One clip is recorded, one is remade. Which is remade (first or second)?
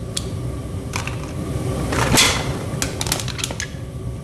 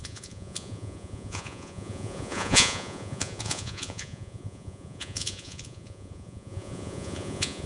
second